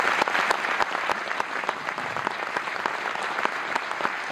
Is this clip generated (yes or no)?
no